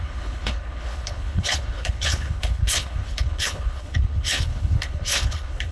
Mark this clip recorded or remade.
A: remade